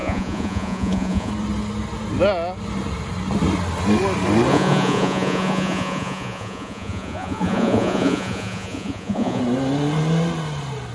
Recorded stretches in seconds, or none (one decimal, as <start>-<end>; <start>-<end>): 1.3-4.5; 9.4-10.9